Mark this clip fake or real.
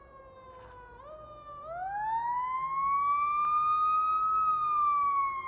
real